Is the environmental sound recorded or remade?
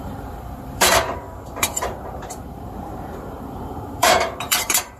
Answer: remade